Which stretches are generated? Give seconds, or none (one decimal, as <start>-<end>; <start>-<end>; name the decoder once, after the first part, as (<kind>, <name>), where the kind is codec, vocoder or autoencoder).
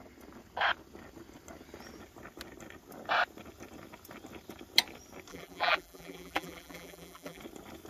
5.3-7.4 (vocoder, BigVGAN v2)